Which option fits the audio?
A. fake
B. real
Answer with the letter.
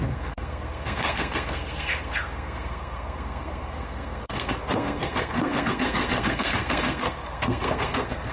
A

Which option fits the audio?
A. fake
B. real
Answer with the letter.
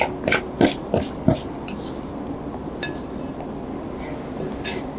B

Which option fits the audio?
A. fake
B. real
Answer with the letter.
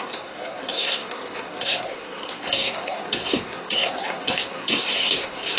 A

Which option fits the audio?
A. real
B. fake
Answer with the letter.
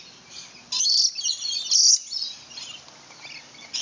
A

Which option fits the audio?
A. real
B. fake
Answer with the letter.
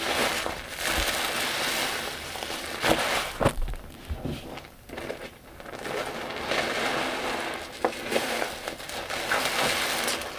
A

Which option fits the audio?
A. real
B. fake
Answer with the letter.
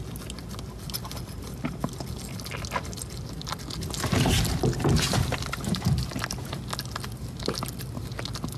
A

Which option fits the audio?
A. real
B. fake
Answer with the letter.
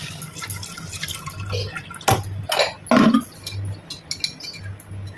A